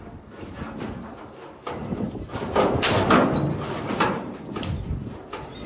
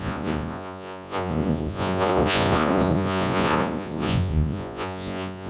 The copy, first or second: second